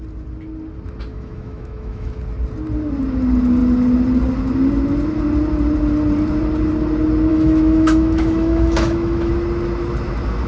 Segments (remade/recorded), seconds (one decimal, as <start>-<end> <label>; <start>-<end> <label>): 0.0-1.1 recorded; 1.1-2.2 remade; 2.2-7.3 recorded; 7.3-9.3 remade; 9.3-10.5 recorded